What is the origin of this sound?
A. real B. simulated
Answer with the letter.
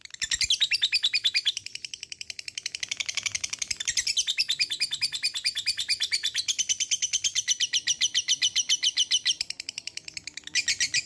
B